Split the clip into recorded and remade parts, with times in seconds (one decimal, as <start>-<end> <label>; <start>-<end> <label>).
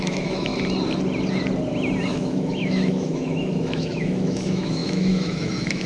0.0-0.5 remade; 0.5-2.1 recorded; 2.1-5.9 remade